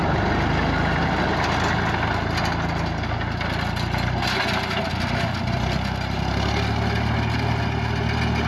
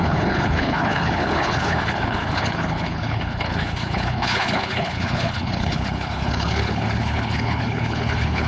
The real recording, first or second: first